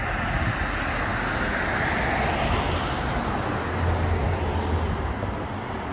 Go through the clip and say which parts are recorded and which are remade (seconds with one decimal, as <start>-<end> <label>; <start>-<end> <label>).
0.0-5.9 recorded